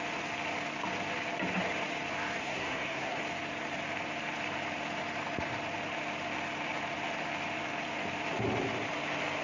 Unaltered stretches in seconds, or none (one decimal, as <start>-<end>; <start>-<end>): 0.0-2.4; 3.2-9.4